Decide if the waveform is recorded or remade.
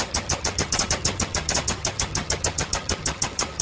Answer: remade